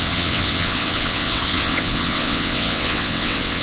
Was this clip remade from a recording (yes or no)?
yes